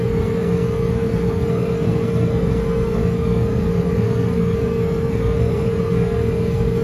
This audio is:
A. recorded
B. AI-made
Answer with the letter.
B